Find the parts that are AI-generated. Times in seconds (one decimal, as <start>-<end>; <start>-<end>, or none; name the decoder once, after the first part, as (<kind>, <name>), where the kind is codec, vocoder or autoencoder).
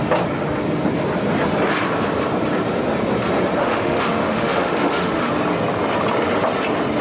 3.6-5.3 (autoencoder, DAC-VAE)